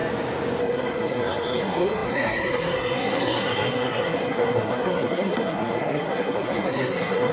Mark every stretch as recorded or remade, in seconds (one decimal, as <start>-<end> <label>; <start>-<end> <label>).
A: 0.0-0.6 recorded; 0.6-7.3 remade